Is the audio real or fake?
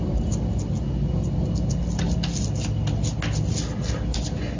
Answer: real